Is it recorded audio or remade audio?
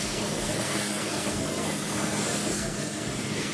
remade